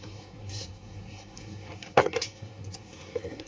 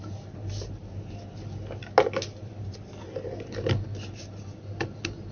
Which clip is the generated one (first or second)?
first